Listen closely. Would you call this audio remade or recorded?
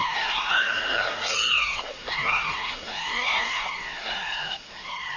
remade